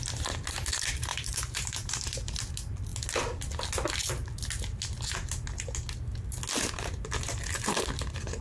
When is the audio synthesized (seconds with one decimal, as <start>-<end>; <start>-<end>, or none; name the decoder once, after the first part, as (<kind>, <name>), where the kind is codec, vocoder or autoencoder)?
1.1-2.5 (vocoder, BigVGAN v2)